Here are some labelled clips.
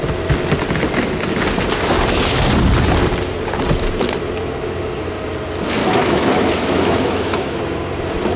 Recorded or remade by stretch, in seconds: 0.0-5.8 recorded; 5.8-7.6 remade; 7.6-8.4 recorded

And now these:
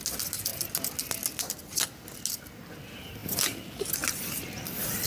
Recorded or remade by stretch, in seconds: 0.0-5.1 recorded

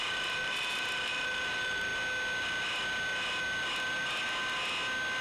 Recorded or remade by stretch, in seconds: 0.0-1.9 remade; 1.9-5.2 recorded